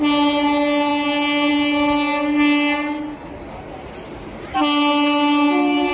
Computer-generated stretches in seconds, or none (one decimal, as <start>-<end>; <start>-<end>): none